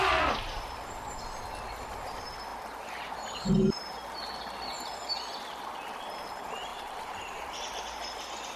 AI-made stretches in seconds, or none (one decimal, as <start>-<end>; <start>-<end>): 6.7-7.8